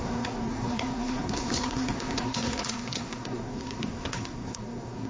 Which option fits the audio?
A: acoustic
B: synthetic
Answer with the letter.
B